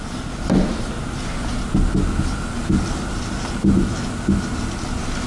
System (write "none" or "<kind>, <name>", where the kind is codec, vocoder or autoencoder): none